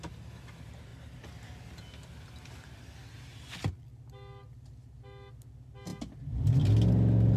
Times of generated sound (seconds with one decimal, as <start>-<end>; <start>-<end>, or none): none